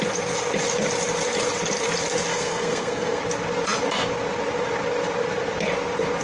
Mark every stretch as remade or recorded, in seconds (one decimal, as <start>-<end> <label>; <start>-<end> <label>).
0.0-2.3 recorded; 2.3-3.2 remade; 3.2-6.2 recorded